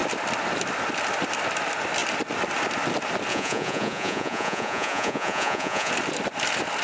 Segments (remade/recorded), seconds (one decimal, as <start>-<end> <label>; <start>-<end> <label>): 0.0-3.3 recorded; 3.3-5.9 remade; 5.9-6.8 recorded